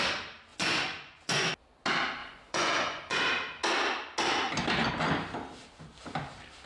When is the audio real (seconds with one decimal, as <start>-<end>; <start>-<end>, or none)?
0.0-0.5; 1.5-2.2; 3.2-6.7